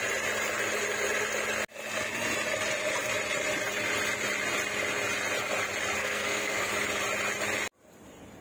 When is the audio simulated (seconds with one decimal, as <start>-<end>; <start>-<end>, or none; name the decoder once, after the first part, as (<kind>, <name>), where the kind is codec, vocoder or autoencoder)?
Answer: 6.0-6.7 (codec, SNAC)